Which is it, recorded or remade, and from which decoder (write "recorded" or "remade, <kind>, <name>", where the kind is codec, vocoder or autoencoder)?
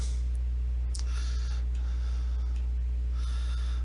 remade, vocoder, BigVGAN v2